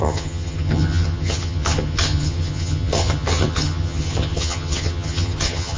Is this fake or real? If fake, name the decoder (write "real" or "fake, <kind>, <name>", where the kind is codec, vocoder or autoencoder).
fake, vocoder, HiFi-GAN